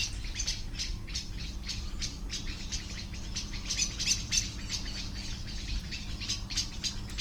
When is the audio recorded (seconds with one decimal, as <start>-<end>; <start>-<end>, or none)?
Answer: none